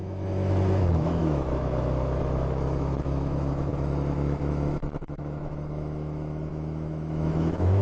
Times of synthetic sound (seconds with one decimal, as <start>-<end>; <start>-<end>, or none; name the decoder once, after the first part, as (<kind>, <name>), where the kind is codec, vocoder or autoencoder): 0.0-7.8 (autoencoder, DAC-VAE)

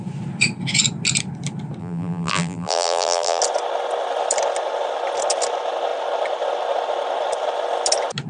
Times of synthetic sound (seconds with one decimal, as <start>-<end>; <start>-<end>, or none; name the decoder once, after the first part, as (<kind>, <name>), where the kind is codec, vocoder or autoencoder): 1.8-3.4 (vocoder, BigVGAN v2)